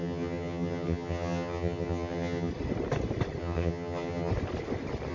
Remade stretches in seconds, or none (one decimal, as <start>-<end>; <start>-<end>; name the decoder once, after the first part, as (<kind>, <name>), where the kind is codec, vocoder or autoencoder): 0.0-2.5 (vocoder, HiFi-GAN); 3.4-4.3